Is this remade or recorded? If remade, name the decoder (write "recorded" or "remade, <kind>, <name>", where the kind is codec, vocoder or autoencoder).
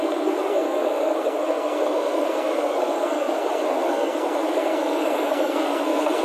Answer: remade, codec, SNAC